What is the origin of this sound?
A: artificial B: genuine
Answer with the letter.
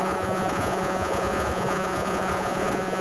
A